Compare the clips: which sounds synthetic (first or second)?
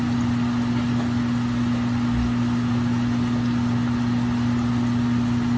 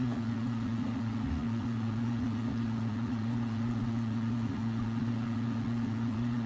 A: second